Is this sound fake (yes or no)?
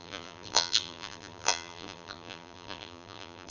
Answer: yes